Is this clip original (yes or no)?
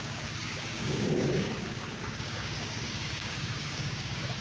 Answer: no